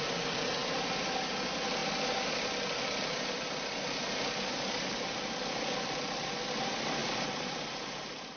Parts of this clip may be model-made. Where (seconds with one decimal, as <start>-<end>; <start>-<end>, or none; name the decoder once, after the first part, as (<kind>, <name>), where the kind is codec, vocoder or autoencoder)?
none

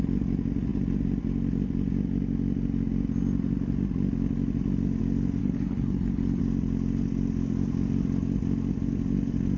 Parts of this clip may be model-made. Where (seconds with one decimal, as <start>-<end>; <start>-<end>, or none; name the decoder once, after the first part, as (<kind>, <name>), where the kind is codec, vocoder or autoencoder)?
5.4-6.4 (codec, HILCodec)